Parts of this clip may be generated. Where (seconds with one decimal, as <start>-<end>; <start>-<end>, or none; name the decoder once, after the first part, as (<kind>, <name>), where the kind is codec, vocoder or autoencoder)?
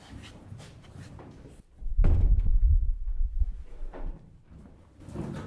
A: 0.0-2.5 (vocoder, BigVGAN v2); 3.4-5.5